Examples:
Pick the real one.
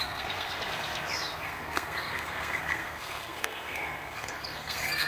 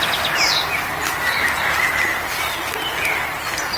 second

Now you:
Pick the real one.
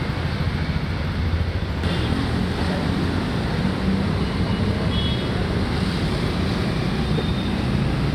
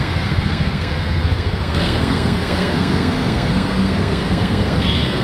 first